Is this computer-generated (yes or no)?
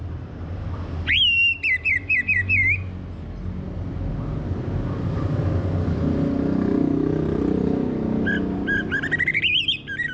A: no